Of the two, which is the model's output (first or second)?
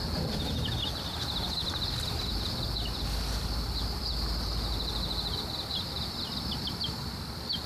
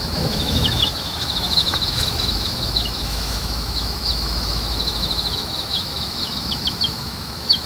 second